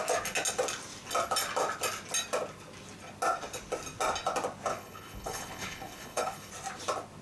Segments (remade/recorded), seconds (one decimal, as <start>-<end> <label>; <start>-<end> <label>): 0.0-4.7 recorded; 4.7-6.5 remade; 6.5-7.2 recorded